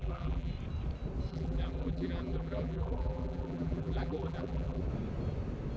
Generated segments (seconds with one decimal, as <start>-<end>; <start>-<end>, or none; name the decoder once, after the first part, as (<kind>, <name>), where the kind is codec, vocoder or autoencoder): 0.0-0.5 (vocoder, BigVGAN v2); 1.3-4.8